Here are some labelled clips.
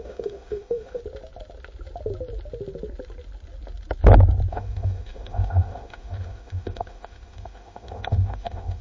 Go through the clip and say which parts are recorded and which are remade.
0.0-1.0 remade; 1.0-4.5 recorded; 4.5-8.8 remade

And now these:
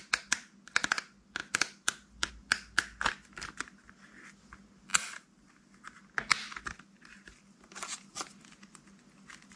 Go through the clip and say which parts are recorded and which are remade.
0.0-1.4 recorded; 1.4-2.3 remade; 2.3-9.6 recorded